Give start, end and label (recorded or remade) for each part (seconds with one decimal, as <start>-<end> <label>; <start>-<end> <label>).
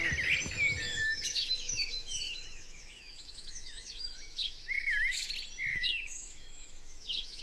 0.0-0.9 recorded; 0.9-5.3 remade; 5.3-5.7 recorded; 5.7-7.4 remade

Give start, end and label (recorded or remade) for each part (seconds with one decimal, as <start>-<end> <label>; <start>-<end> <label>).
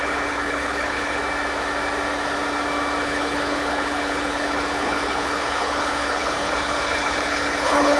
0.0-1.2 remade; 1.2-3.0 recorded; 3.0-8.0 remade